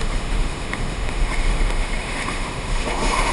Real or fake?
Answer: fake